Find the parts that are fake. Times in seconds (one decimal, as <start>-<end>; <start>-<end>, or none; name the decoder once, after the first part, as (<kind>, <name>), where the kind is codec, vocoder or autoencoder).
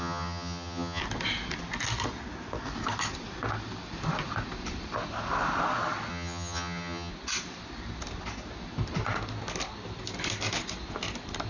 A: 0.0-1.0 (vocoder, HiFi-GAN); 6.1-7.1